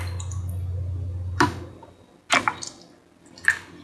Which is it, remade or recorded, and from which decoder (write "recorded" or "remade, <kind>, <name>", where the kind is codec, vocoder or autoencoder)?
recorded